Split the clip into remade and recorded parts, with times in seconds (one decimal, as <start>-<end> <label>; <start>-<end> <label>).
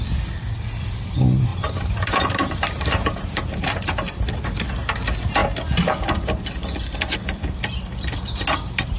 0.0-1.5 recorded; 1.5-3.7 remade; 3.7-9.0 recorded